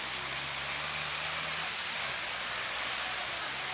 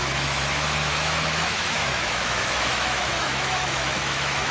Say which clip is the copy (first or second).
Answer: second